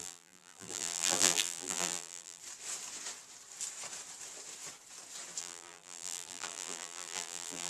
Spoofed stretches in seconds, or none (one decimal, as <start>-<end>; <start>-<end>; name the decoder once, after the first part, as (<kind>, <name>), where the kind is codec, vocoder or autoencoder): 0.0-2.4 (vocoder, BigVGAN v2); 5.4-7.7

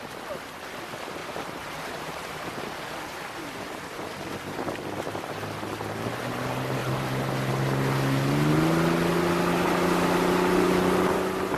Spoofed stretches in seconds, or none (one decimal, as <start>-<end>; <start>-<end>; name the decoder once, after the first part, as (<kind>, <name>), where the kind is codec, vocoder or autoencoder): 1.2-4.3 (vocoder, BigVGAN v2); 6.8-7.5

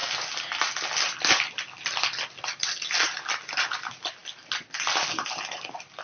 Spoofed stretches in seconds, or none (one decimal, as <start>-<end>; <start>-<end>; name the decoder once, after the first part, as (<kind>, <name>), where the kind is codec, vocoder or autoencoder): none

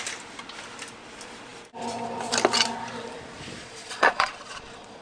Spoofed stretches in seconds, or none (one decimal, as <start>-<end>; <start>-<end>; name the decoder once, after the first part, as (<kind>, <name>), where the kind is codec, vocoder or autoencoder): 3.6-5.0 (vocoder, Vocos)

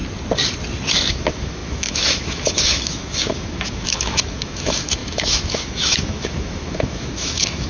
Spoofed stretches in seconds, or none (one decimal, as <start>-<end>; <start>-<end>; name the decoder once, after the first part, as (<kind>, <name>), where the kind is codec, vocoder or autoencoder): 1.1-7.7 (autoencoder, DAC-VAE)

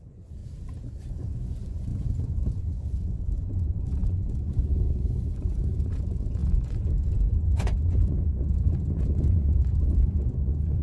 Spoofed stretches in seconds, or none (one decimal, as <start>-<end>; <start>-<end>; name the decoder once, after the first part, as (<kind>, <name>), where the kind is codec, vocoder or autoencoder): 0.0-0.4 (vocoder, Vocos); 1.1-10.8